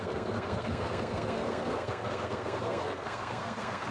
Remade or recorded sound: remade